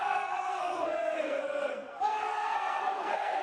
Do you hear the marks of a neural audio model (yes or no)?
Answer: yes